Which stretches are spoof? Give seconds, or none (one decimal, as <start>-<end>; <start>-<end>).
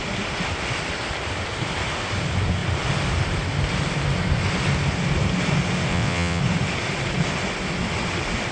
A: 5.9-6.4